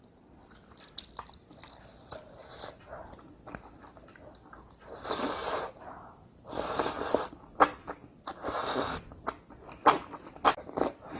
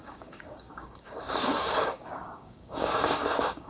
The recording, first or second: first